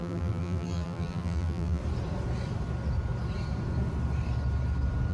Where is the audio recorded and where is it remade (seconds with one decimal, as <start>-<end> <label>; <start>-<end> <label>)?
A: 0.0-1.8 remade; 1.8-5.1 recorded